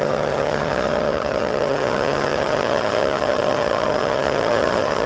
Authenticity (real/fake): fake